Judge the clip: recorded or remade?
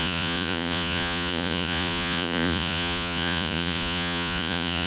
remade